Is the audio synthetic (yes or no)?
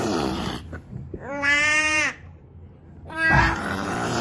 yes